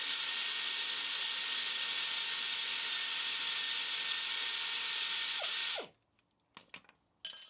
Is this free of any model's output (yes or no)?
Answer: yes